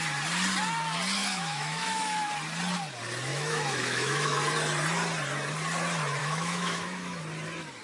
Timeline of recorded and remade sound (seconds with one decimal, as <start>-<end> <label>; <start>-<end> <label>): 0.0-1.2 recorded; 1.2-2.3 remade; 2.3-3.3 recorded; 3.3-4.4 remade; 4.4-6.2 recorded; 6.2-7.2 remade; 7.2-7.8 recorded